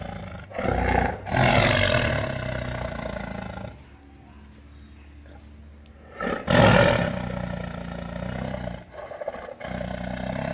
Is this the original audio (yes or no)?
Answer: yes